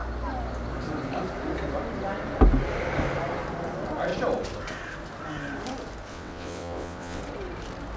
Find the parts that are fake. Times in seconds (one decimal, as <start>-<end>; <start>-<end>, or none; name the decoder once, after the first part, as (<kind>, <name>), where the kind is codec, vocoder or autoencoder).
6.1-7.2 (vocoder, WaveNeXt)